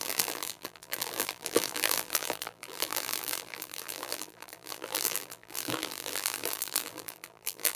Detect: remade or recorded remade